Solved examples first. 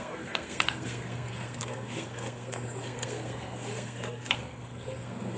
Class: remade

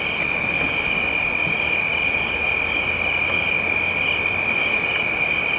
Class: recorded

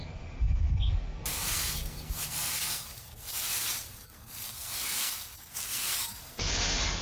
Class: remade